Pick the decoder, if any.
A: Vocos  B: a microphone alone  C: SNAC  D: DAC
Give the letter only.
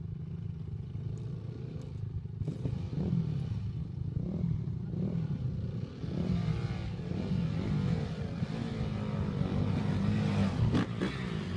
B